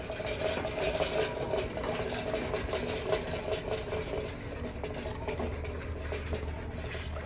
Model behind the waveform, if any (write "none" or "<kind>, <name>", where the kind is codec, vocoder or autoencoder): none